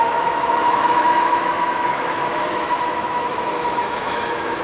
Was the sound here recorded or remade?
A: remade